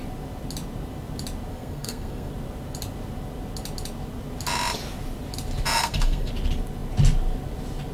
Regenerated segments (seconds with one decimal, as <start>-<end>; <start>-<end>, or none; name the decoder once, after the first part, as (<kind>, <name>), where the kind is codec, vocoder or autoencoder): 1.5-2.3 (codec, SNAC); 5.8-6.3